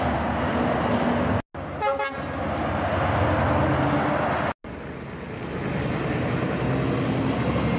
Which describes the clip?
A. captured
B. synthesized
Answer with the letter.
A